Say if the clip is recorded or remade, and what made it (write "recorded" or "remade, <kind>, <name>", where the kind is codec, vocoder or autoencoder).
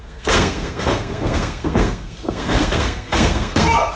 remade, codec, SNAC